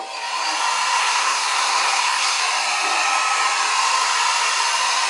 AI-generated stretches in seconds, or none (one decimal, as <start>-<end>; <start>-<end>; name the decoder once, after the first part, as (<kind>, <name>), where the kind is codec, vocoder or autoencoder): 1.0-2.4 (codec, SNAC)